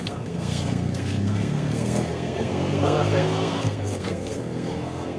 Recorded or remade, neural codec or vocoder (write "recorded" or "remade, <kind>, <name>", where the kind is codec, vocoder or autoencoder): remade, codec, SNAC